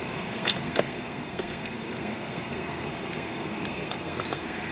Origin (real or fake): fake